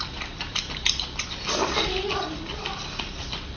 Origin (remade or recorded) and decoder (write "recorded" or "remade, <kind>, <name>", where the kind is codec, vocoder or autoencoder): recorded